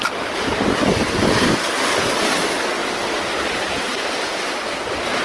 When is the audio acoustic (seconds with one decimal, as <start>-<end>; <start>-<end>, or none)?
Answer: 0.0-5.2